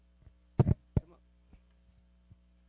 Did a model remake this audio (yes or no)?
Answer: no